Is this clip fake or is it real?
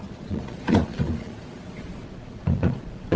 fake